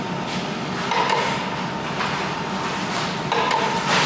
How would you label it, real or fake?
real